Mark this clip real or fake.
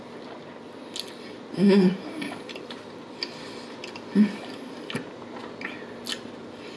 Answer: real